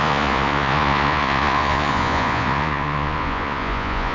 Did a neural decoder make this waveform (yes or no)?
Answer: yes